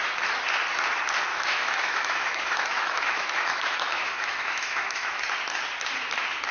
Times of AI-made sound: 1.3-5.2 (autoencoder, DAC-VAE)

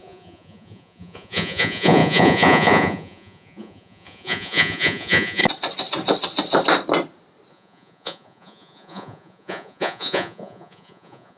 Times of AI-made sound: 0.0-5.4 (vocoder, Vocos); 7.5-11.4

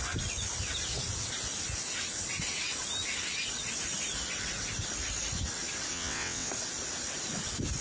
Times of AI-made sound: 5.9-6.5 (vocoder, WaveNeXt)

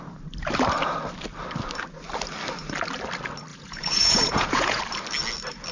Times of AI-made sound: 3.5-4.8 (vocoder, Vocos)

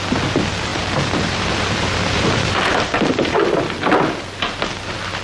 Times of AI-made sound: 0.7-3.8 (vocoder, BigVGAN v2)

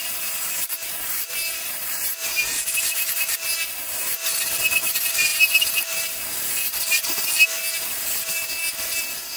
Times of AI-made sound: 0.0-9.4 (vocoder, BigVGAN v2)

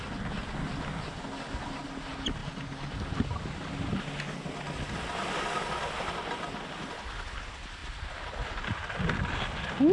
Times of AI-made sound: 7.8-8.5 (vocoder, BigVGAN v2)

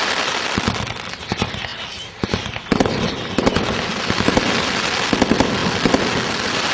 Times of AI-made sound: none